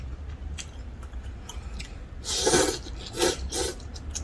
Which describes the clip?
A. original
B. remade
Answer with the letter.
A